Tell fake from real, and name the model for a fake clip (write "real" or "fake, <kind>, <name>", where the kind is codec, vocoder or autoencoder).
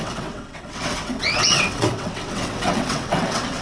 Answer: fake, vocoder, WaveNeXt